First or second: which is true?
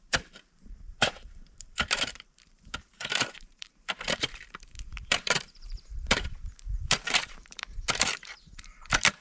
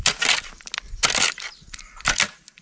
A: second